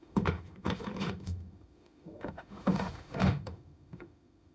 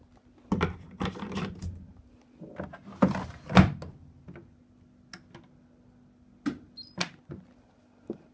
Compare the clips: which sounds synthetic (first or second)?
first